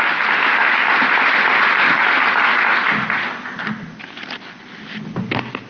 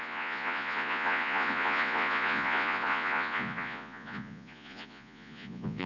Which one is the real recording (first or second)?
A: first